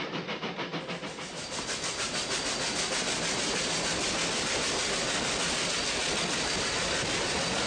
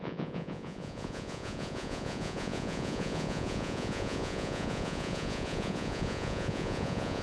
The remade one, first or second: second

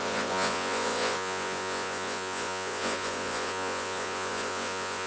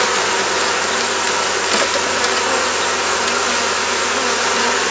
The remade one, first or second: first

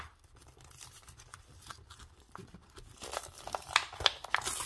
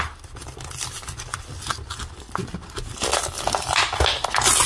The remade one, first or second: first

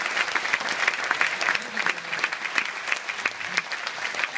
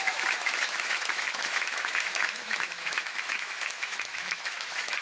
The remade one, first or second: second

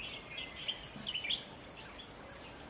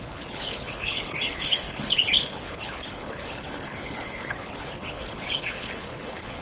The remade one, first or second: second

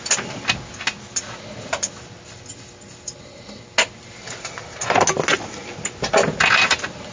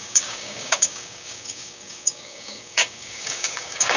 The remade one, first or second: second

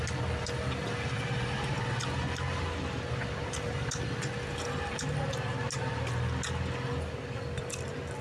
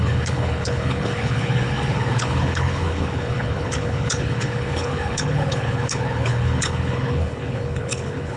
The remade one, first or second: second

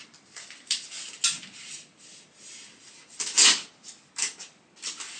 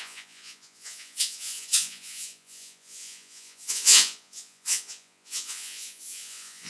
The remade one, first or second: second